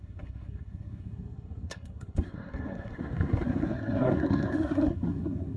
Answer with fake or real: fake